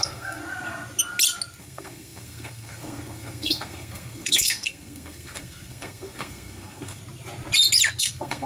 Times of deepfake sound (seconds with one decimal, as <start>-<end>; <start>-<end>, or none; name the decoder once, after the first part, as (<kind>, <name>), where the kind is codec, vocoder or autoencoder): 0.0-0.4 (codec, SNAC); 1.6-7.0; 8.0-8.5